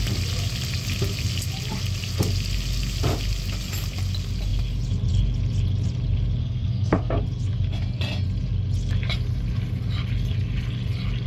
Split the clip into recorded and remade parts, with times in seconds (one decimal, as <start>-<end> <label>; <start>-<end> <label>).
0.0-6.4 recorded; 6.4-7.2 remade; 7.2-11.3 recorded